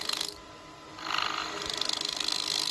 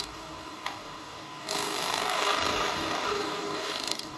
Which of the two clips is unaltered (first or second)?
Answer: first